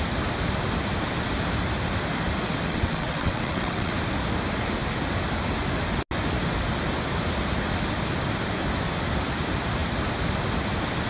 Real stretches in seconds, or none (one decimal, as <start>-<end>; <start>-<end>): 0.0-2.7; 3.9-11.1